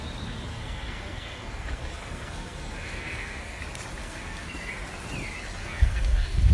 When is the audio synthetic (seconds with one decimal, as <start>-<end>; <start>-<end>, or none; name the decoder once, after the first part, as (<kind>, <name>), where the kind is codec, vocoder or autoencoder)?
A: 0.5-3.6 (codec, SNAC); 4.0-4.7; 5.6-6.5